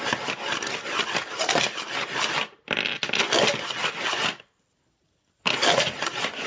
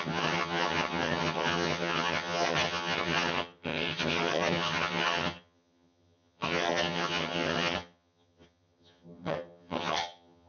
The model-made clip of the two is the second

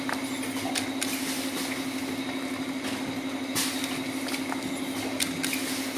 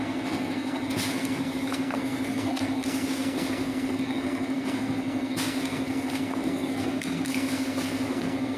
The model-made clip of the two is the second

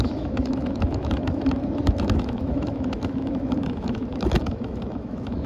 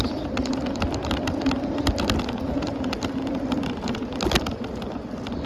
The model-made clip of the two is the first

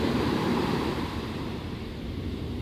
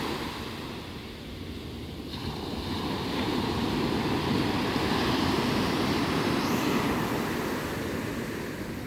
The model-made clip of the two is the first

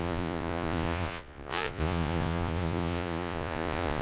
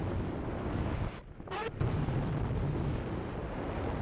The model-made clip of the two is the first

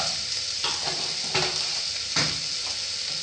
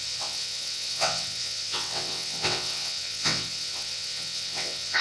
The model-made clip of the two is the second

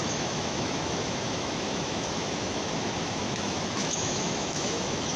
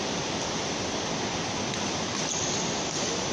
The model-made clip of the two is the first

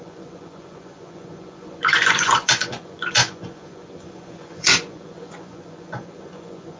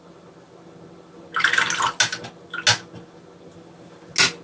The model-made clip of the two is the first